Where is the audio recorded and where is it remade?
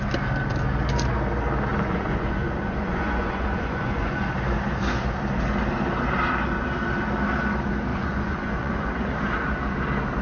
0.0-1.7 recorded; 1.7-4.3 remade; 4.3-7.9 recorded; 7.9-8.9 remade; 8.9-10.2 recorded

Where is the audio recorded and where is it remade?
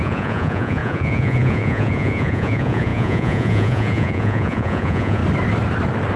0.0-5.2 remade; 5.2-6.2 recorded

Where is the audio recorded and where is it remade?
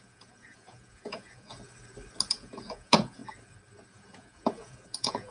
0.0-1.5 remade; 1.5-2.3 recorded; 2.3-3.2 remade; 3.2-3.9 recorded; 3.9-5.3 remade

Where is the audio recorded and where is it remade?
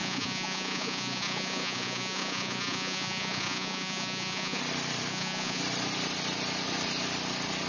0.0-4.6 remade; 4.6-5.1 recorded; 5.1-5.6 remade; 5.6-7.7 recorded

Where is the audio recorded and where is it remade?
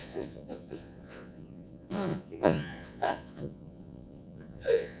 0.0-5.0 remade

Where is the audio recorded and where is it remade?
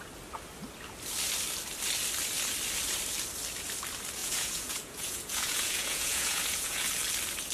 0.0-4.2 recorded; 4.2-6.9 remade; 6.9-7.5 recorded